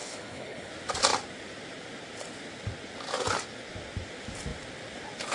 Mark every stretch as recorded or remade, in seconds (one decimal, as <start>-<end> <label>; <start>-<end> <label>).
0.0-0.7 remade; 0.7-5.3 recorded